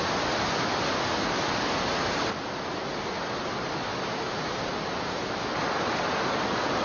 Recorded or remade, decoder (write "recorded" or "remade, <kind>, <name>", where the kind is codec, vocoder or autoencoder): recorded